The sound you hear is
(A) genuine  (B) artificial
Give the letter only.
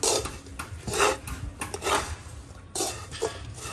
A